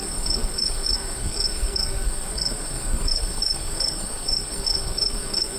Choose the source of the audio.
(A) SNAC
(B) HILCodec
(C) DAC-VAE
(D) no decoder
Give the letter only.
A